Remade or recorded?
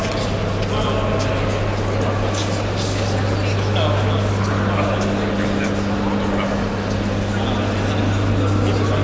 recorded